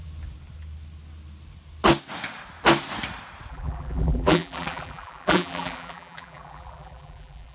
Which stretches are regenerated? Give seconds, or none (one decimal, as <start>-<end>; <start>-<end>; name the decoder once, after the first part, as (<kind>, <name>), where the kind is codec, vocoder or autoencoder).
3.5-7.5 (vocoder, BigVGAN v2)